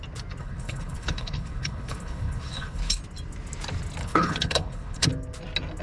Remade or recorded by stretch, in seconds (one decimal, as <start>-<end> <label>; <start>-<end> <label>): 0.0-0.4 recorded; 0.4-3.0 remade; 3.0-4.0 recorded; 4.0-5.1 remade; 5.1-5.8 recorded